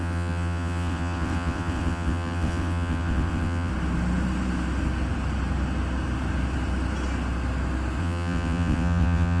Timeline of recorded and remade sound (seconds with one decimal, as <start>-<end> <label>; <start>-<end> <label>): 0.0-3.7 remade; 3.7-8.0 recorded; 8.0-9.4 remade